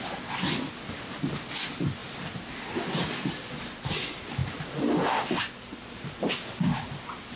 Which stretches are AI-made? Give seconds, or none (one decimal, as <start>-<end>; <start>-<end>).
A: none